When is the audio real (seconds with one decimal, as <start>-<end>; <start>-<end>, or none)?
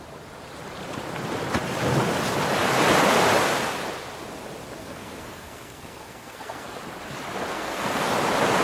0.0-4.8; 6.8-7.5; 8.1-8.6